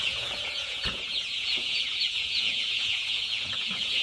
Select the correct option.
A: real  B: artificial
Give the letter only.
B